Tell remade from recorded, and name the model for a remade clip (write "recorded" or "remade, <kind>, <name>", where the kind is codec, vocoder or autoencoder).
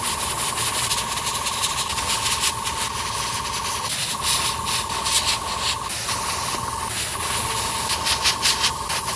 recorded